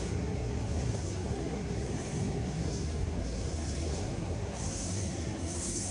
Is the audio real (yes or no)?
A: no